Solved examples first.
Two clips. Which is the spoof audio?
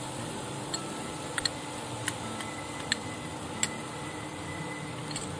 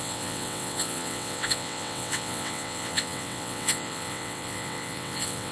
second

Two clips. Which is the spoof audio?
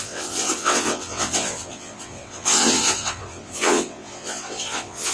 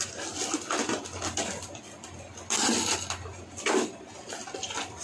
first